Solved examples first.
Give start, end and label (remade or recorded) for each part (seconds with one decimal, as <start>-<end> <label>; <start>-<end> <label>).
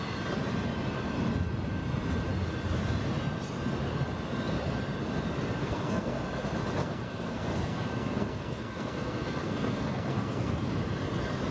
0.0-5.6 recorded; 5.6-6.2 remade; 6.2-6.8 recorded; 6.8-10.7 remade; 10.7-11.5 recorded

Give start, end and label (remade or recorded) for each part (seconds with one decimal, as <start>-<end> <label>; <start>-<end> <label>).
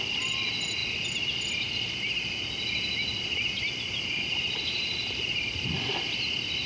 0.0-6.7 recorded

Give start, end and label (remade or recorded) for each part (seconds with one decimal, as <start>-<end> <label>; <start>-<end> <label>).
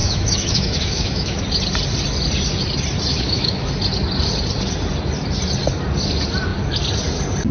0.0-1.4 remade; 1.4-3.1 recorded; 3.1-3.7 remade; 3.7-7.5 recorded